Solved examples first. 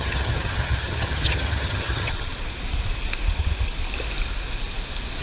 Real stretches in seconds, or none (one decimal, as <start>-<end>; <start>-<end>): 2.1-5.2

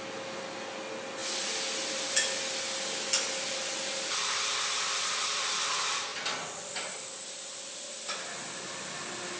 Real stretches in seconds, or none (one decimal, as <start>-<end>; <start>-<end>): 0.0-9.4

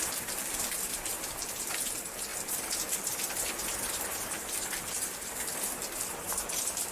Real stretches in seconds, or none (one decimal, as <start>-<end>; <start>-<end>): none

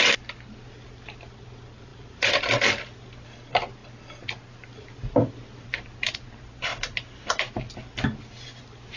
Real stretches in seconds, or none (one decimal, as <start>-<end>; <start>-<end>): 0.0-1.9; 2.5-9.0